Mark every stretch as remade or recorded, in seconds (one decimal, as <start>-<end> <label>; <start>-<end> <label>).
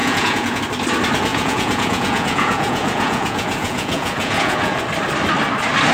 0.0-0.6 remade; 0.6-1.3 recorded; 1.3-4.8 remade; 4.8-5.9 recorded